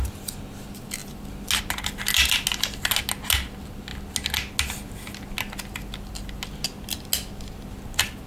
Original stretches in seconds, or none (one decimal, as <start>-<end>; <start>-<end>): 0.0-8.3